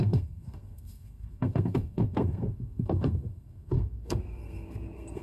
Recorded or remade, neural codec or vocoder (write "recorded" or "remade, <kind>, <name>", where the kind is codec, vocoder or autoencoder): remade, codec, SNAC